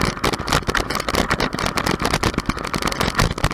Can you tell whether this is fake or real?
real